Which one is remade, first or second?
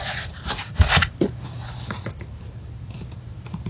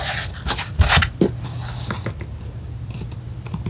first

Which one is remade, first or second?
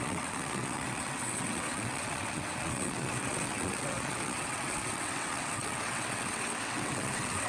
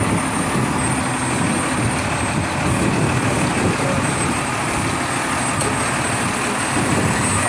first